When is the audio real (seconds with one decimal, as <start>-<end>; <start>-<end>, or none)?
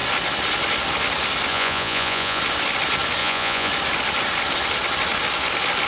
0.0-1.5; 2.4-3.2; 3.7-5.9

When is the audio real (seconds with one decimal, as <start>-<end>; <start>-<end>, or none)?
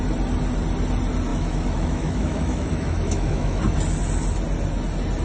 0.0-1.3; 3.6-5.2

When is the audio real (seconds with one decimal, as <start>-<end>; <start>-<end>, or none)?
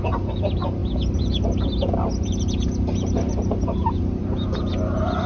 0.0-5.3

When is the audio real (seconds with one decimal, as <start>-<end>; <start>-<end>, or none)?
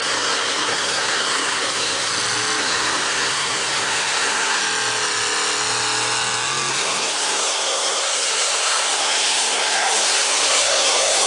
2.1-2.6; 4.6-6.7